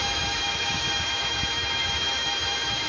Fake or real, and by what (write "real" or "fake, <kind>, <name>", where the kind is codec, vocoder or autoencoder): fake, autoencoder, DAC-VAE